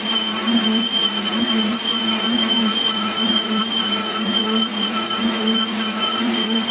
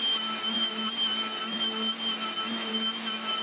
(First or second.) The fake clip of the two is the first